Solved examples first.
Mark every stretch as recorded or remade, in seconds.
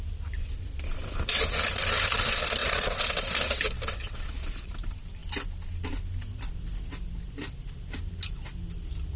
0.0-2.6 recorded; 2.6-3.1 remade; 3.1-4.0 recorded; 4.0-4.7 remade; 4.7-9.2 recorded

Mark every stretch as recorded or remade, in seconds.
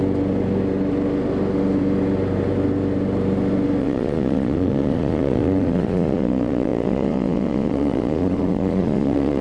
0.0-3.8 recorded; 3.8-9.4 remade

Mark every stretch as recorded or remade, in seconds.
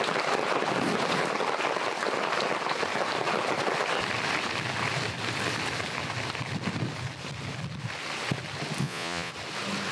0.0-8.8 recorded; 8.8-9.3 remade; 9.3-9.9 recorded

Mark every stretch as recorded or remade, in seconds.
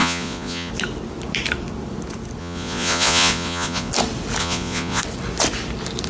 0.0-0.7 remade; 0.7-2.4 recorded; 2.4-3.9 remade; 3.9-4.4 recorded; 4.4-5.0 remade; 5.0-6.1 recorded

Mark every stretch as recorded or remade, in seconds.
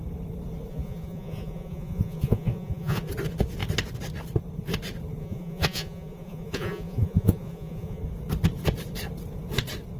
0.0-0.7 recorded; 0.7-3.1 remade; 3.1-5.2 recorded; 5.2-8.0 remade; 8.0-10.0 recorded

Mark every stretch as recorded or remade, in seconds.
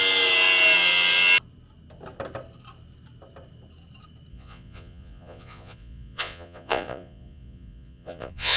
0.0-4.3 recorded; 4.3-8.6 remade